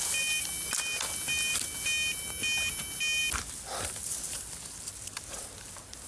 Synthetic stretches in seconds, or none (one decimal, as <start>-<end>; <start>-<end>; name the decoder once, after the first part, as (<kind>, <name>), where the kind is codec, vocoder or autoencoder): none